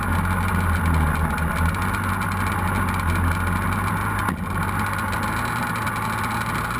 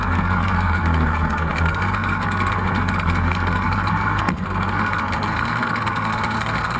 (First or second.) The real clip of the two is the first